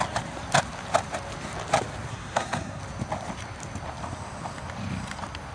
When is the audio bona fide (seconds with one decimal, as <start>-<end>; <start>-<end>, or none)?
0.0-2.1; 2.8-5.5